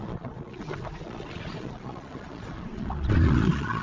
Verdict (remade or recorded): remade